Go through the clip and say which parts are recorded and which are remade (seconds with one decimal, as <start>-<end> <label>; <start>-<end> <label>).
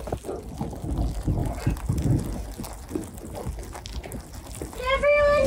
0.0-5.5 recorded